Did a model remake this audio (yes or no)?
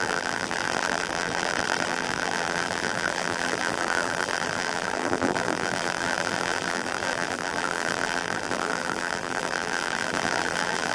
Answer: yes